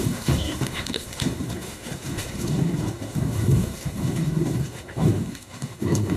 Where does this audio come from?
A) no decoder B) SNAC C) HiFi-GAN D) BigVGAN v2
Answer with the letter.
B